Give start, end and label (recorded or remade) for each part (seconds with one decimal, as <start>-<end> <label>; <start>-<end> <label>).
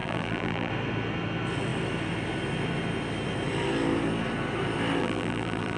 0.0-0.7 remade; 0.7-5.0 recorded; 5.0-5.8 remade